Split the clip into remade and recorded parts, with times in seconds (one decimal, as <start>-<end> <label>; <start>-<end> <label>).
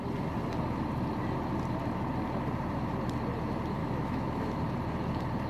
0.0-3.8 recorded; 3.8-4.6 remade; 4.6-5.5 recorded